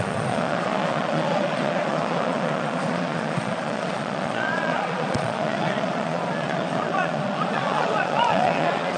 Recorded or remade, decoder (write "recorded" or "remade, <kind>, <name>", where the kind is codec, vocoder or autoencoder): remade, vocoder, Vocos